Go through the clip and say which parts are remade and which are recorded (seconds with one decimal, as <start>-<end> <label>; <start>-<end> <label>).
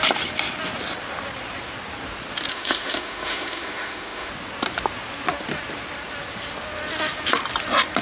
0.0-2.5 recorded; 2.5-4.3 remade; 4.3-8.0 recorded